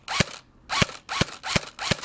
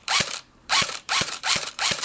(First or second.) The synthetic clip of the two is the second